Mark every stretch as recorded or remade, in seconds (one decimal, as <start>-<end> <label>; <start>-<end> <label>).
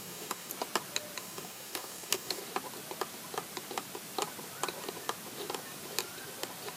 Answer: 0.0-0.5 remade; 0.5-1.2 recorded; 1.2-2.4 remade; 2.4-6.8 recorded